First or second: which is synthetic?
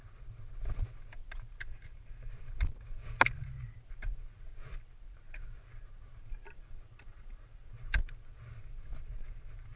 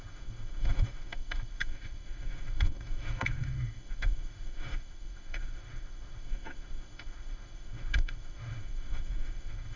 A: second